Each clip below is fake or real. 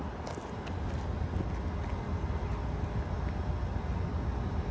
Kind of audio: real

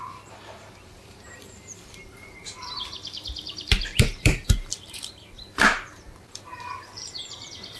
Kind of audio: fake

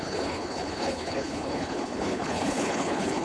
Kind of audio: fake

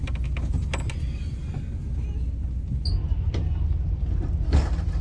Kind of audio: real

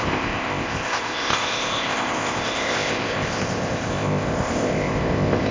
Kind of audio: fake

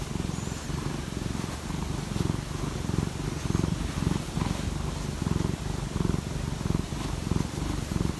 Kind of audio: real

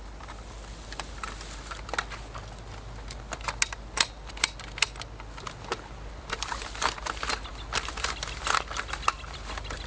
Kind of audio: real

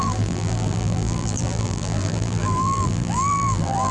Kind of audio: fake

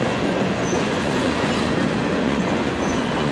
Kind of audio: fake